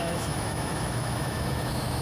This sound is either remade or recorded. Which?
remade